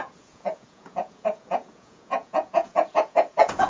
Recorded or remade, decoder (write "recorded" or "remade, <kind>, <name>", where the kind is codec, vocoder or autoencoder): remade, vocoder, Vocos